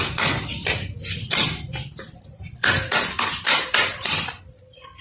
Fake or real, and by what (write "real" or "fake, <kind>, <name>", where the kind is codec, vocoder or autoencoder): fake, vocoder, BigVGAN v2